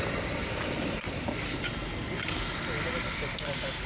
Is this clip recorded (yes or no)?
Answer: yes